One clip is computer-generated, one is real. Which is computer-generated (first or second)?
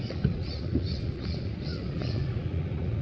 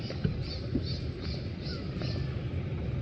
first